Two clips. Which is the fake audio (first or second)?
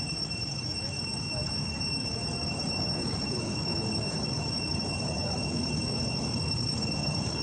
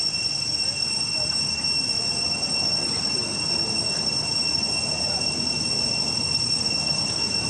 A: first